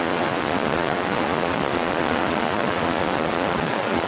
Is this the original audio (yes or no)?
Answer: no